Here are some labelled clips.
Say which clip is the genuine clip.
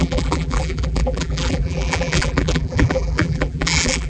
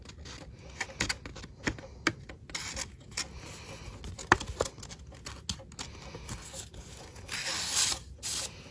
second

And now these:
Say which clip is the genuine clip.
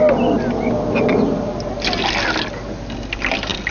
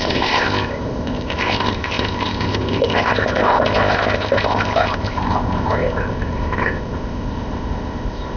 first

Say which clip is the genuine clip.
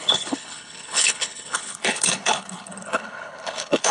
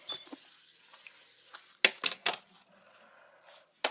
second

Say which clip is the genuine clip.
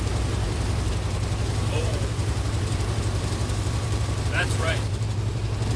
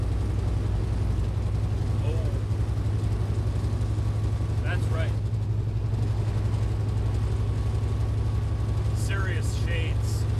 second